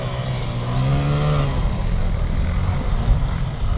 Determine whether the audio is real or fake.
real